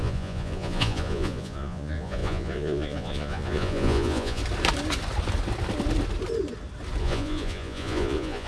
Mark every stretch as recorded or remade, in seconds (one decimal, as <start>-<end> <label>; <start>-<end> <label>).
0.0-4.4 remade; 4.4-7.0 recorded; 7.0-8.5 remade